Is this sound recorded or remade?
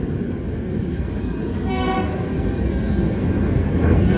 remade